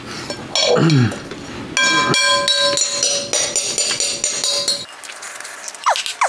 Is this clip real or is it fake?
real